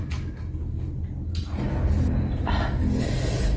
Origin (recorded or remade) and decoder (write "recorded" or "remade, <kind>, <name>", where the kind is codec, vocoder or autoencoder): recorded